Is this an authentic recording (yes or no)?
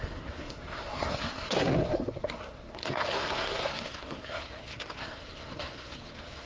no